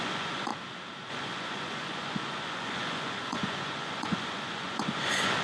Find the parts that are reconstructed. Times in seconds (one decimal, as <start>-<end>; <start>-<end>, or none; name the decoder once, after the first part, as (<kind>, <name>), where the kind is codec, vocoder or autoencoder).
0.0-0.5 (vocoder, Vocos); 1.1-5.4